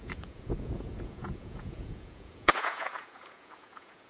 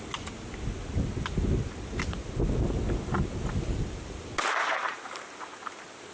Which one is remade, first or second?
first